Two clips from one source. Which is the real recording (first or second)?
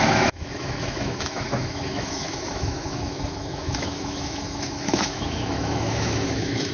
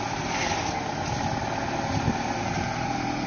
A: second